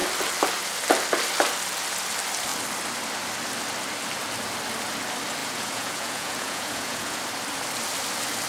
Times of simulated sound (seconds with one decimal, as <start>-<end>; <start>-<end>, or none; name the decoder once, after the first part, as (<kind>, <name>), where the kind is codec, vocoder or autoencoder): 5.4-7.2 (vocoder, Vocos)